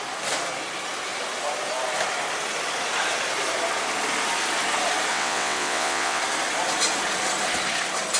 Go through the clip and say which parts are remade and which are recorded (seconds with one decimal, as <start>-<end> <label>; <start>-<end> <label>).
0.0-5.1 recorded; 5.1-6.2 remade; 6.2-8.2 recorded